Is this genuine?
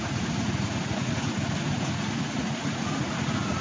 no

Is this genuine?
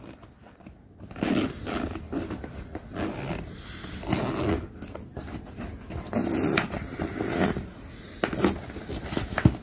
yes